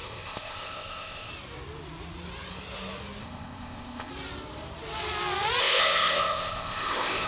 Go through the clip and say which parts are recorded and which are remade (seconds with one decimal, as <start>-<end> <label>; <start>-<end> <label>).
0.0-1.3 remade; 1.3-3.2 recorded; 3.2-4.1 remade; 4.1-5.6 recorded; 5.6-7.3 remade